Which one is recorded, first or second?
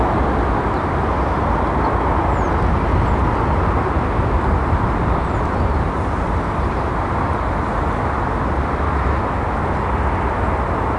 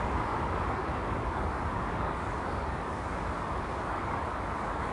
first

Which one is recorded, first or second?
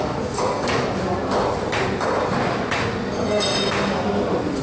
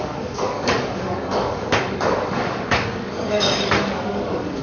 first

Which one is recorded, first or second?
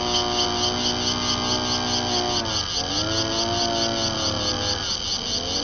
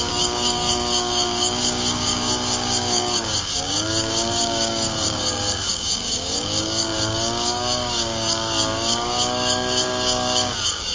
first